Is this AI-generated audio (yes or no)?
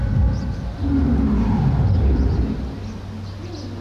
no